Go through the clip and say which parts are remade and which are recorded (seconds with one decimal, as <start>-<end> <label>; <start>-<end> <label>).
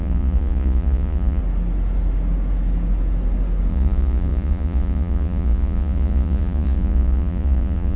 0.0-1.4 remade; 1.4-3.7 recorded; 3.7-8.0 remade